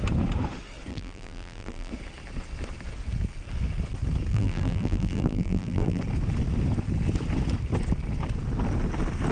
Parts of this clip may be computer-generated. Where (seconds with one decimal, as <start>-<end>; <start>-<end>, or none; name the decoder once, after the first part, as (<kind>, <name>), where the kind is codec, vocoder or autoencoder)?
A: 0.9-1.9 (vocoder, BigVGAN v2); 4.3-6.0